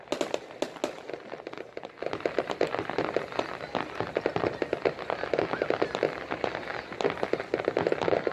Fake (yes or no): no